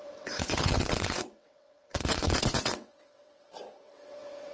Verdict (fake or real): fake